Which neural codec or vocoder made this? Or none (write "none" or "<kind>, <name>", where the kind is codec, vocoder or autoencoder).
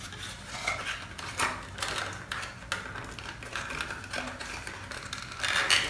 none